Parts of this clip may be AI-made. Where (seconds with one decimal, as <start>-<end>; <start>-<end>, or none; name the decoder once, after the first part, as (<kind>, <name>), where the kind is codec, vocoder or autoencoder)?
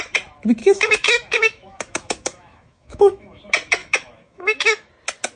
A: 0.6-3.4 (autoencoder, DAC-VAE); 3.8-4.9